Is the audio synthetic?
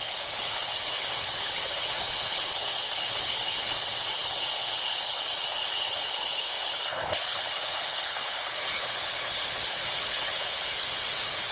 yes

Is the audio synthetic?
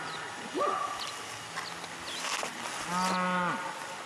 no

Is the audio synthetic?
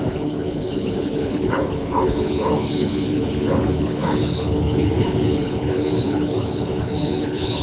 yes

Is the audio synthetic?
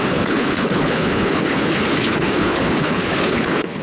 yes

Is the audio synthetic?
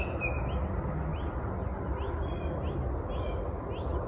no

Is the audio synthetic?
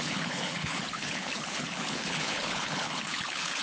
yes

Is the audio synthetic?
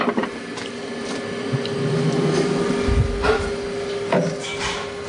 no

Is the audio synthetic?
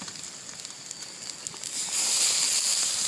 no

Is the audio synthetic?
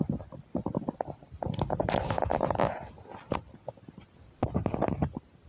no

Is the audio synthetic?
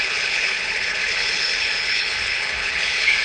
yes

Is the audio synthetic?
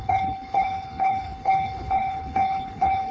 yes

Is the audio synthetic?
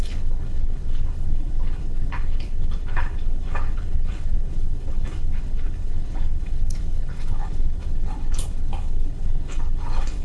yes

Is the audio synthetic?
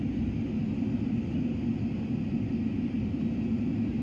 no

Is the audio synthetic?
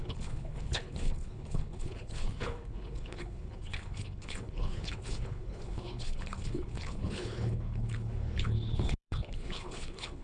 yes